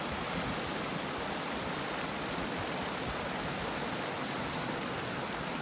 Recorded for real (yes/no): yes